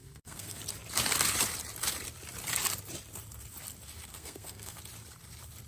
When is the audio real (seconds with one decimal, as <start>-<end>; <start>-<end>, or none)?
0.6-4.1; 4.8-5.7